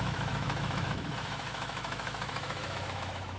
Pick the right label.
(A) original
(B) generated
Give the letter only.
B